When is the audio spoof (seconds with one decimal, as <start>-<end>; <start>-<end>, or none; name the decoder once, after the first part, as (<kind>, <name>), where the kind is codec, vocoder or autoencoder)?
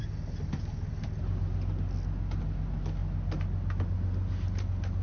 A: none